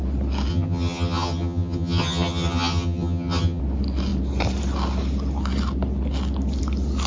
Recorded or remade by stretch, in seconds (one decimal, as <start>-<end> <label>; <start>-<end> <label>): 0.0-0.5 recorded; 0.5-3.6 remade; 3.6-7.1 recorded